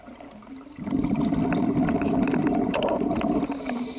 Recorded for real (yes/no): yes